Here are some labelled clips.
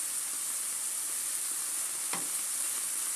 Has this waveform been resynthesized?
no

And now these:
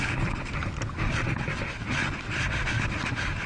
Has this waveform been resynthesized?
no